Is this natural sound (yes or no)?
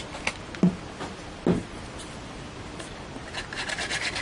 yes